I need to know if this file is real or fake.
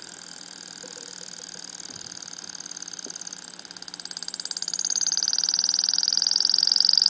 real